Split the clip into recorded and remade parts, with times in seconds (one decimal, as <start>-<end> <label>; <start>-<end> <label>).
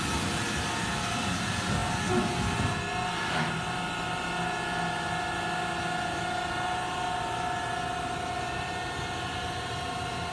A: 0.0-10.3 recorded